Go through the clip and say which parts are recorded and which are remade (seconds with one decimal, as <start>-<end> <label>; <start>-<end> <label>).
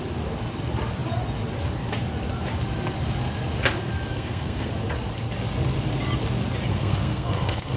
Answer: 0.0-4.1 recorded; 4.1-4.7 remade; 4.7-6.7 recorded; 6.7-7.8 remade